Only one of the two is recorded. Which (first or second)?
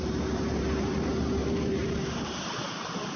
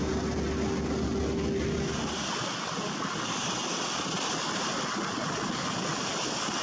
second